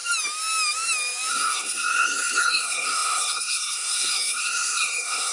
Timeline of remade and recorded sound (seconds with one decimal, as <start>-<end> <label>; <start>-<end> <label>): 0.0-1.3 recorded; 1.3-5.3 remade